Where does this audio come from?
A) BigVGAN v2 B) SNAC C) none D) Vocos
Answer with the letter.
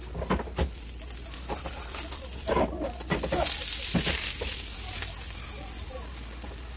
C